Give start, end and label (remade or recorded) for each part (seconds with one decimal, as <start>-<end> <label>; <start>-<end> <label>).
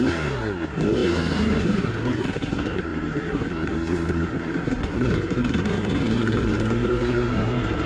0.0-7.9 remade